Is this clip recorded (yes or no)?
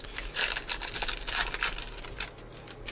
yes